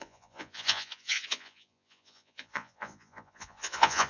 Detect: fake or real fake